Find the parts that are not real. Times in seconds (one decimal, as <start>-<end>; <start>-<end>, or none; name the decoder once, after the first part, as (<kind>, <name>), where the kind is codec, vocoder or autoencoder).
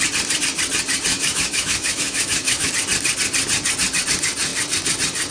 1.1-2.7 (autoencoder, DAC-VAE)